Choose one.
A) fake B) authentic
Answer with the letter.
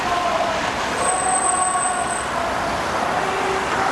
B